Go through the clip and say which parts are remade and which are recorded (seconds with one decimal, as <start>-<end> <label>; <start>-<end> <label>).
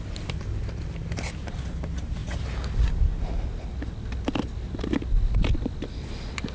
0.0-6.5 recorded